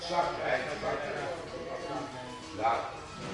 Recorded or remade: recorded